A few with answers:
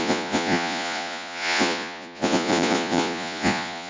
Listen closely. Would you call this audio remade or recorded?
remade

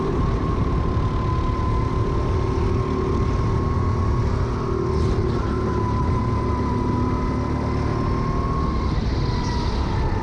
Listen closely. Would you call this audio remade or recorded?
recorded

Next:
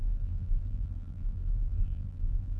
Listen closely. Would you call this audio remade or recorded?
remade